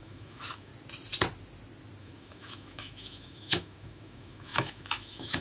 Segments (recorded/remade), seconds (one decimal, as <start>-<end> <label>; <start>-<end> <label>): 0.0-0.7 remade; 0.7-2.0 recorded; 2.0-5.4 remade